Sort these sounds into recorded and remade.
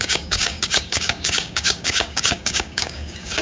remade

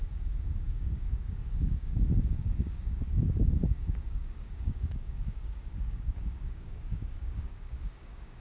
remade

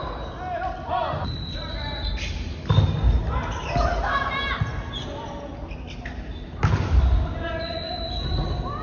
recorded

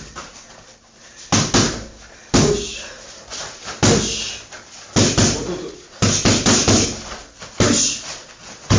recorded